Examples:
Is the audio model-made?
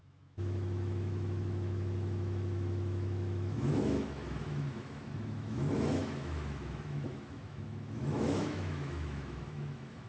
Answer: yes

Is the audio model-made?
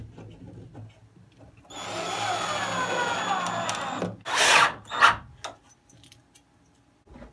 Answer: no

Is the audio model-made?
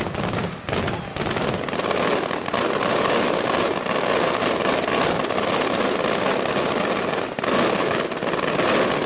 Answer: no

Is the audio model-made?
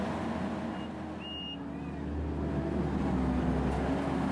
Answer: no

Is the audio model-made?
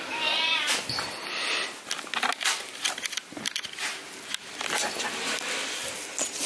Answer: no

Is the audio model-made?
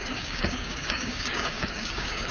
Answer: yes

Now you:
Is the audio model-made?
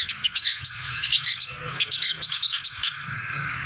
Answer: yes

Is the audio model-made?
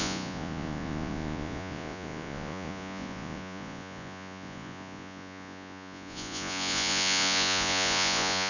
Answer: yes